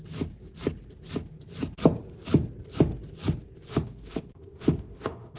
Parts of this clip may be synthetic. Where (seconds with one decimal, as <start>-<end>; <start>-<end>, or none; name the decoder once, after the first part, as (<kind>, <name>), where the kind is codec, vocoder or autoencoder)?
3.7-5.4 (autoencoder, DAC-VAE)